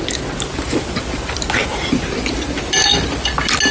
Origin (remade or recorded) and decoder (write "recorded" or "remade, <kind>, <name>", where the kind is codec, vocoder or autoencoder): recorded